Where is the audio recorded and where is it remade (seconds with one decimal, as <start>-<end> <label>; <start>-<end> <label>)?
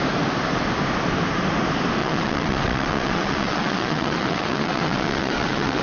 0.0-2.0 recorded; 2.0-5.8 remade